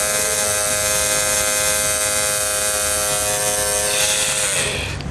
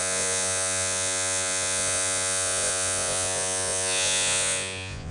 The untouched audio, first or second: first